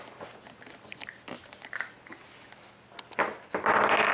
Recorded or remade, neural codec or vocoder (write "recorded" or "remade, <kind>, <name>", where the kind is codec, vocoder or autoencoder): recorded